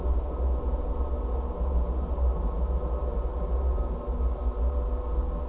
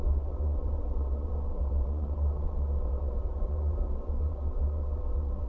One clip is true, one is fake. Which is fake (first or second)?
second